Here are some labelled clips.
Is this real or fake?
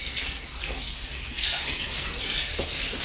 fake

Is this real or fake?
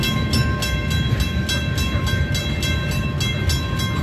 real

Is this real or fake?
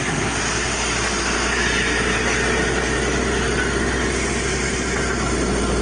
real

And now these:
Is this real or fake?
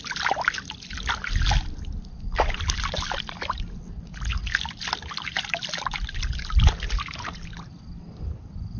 real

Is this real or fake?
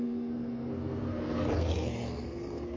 fake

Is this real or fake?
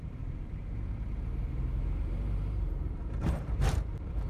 fake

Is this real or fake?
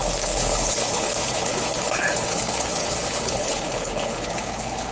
fake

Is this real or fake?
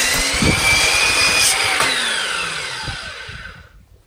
real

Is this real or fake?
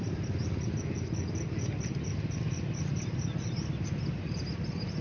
real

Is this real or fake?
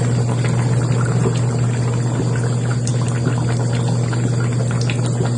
real